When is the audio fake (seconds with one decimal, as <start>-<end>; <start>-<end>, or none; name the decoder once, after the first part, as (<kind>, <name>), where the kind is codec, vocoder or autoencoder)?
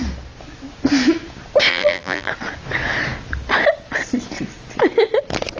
1.7-2.3 (vocoder, BigVGAN v2)